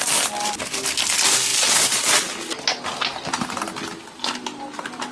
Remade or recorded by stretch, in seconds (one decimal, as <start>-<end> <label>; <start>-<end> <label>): 0.0-5.1 recorded

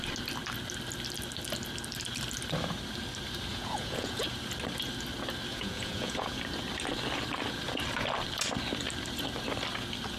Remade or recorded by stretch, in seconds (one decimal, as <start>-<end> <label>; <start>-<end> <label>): 0.0-3.5 recorded; 3.5-4.2 remade; 4.2-5.5 recorded; 5.5-6.4 remade; 6.4-10.2 recorded